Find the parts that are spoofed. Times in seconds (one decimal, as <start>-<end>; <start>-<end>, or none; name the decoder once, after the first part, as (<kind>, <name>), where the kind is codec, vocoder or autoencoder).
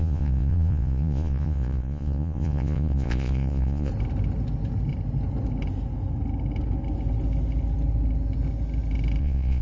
0.0-3.9 (vocoder, Vocos); 9.2-9.6